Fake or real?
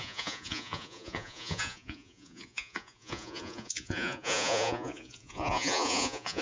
fake